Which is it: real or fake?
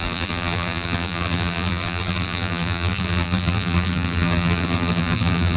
fake